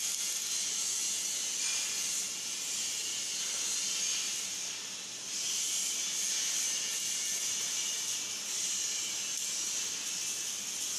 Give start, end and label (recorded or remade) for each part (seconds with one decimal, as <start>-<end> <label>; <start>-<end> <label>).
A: 0.0-11.0 recorded